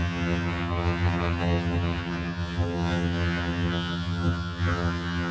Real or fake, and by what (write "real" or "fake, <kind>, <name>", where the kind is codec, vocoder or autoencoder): fake, vocoder, HiFi-GAN